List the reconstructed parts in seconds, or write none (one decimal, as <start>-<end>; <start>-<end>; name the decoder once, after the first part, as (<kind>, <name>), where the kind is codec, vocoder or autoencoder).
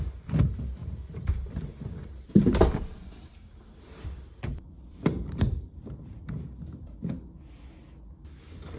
0.8-5.9 (vocoder, BigVGAN v2)